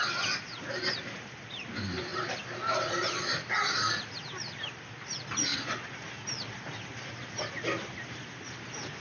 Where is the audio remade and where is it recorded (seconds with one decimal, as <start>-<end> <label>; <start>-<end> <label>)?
0.0-9.0 recorded